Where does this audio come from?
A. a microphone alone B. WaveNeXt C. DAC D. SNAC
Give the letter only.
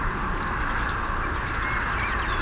A